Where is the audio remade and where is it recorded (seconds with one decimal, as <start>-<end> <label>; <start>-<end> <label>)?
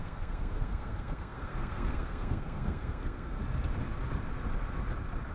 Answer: 0.0-3.4 remade; 3.4-5.3 recorded